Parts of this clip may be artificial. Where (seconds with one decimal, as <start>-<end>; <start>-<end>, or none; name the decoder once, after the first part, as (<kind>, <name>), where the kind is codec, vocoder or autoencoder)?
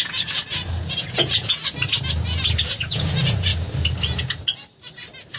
0.0-1.6 (vocoder, Vocos); 2.6-3.5